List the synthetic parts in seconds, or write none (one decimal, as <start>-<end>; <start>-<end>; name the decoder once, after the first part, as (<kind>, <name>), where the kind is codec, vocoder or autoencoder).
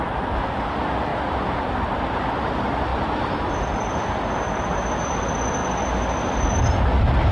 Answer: 1.1-2.4 (vocoder, BigVGAN v2); 2.9-3.5